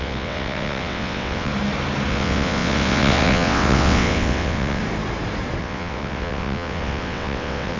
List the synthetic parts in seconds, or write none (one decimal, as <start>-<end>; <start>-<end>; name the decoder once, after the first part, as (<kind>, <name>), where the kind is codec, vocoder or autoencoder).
0.0-1.5 (vocoder, WaveNeXt); 2.1-4.8; 5.6-7.8